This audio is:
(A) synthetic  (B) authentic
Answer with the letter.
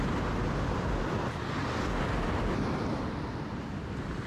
B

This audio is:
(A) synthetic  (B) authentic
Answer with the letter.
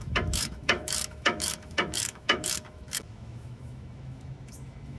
A